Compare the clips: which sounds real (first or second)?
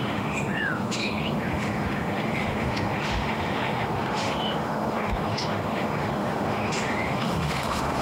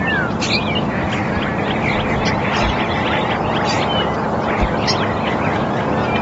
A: second